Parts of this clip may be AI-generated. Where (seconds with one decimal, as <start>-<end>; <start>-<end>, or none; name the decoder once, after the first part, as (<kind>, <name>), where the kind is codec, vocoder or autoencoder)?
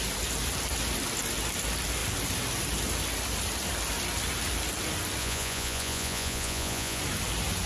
5.2-7.0 (vocoder, Vocos)